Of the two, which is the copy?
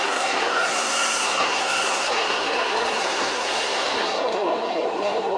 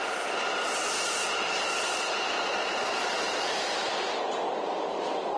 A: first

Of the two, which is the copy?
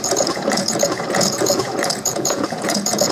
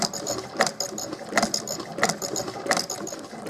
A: first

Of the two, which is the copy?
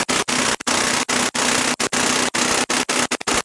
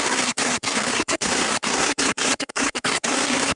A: second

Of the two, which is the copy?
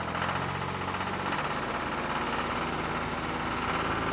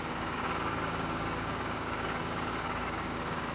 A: second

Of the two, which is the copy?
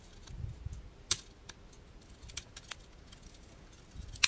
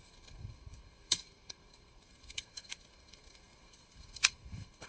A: second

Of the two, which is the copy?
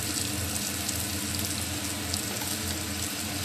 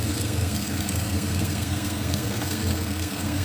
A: second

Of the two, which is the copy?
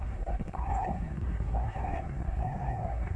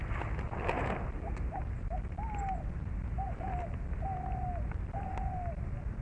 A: first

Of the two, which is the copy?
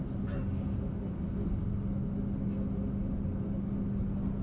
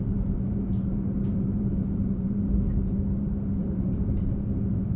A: second